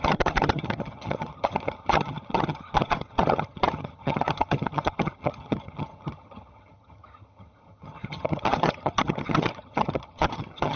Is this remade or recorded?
remade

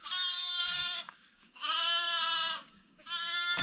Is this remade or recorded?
remade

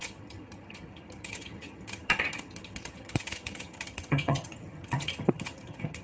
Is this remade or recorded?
remade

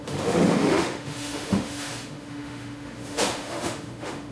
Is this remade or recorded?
remade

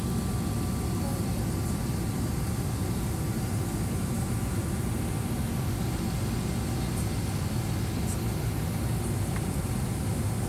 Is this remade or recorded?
recorded